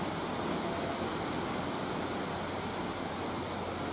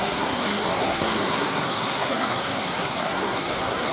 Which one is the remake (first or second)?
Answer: second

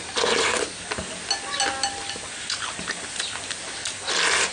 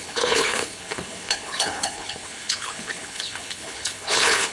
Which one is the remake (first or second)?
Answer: second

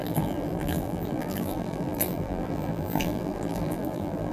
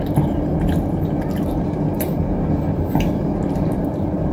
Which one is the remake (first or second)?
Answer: first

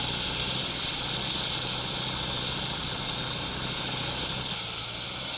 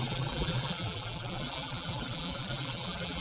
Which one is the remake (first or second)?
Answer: second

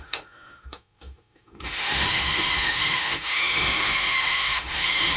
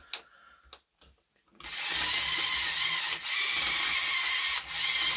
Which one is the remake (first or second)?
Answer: first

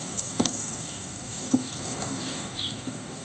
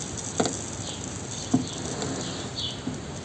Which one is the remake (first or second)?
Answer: first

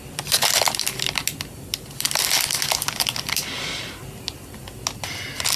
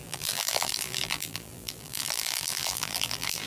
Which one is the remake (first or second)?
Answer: second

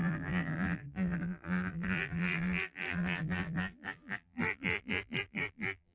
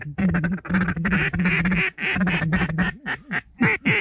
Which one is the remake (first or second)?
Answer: first